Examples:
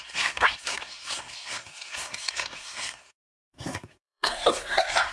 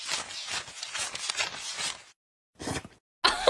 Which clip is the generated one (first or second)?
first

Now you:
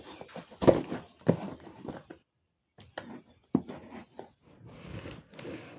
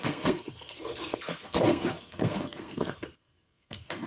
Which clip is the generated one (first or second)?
second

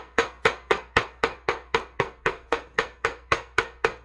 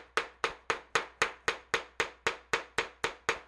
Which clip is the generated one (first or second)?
first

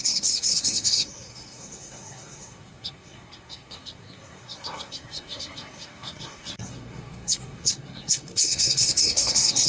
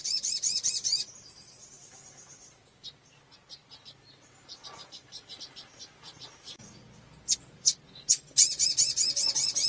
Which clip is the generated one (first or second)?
first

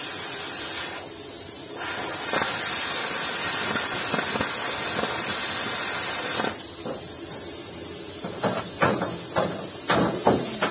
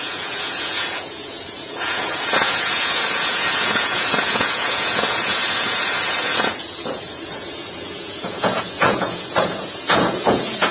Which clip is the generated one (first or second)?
second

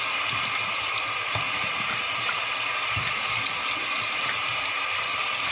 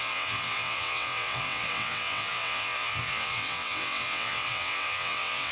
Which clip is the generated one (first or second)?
second